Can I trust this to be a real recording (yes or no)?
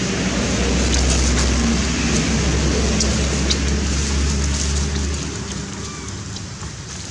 yes